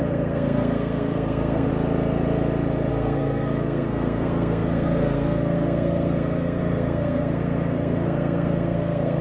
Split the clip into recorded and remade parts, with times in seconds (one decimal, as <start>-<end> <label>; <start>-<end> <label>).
0.0-1.7 remade; 1.7-2.9 recorded; 2.9-9.2 remade